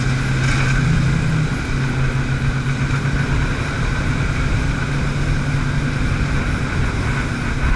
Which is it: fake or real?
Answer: real